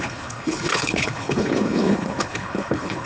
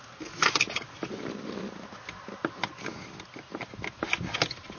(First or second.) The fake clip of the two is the first